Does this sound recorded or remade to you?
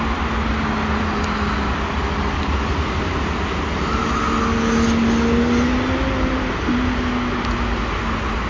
recorded